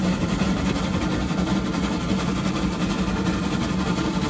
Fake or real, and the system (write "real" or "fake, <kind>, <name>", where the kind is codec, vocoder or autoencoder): real